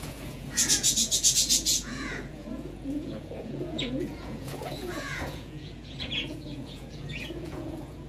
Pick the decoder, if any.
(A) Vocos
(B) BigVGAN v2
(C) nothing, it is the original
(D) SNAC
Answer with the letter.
A